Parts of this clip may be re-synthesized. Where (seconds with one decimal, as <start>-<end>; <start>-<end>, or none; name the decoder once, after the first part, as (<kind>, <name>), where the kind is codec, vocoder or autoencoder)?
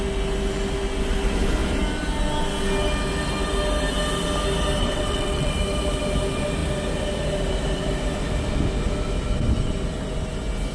4.8-5.5 (vocoder, WaveNeXt)